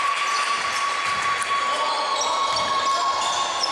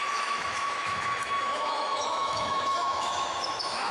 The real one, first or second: first